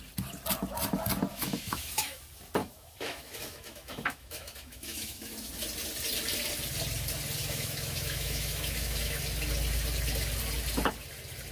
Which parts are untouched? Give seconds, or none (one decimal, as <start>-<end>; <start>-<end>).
0.0-1.3; 2.2-2.6; 5.5-7.4; 9.2-11.5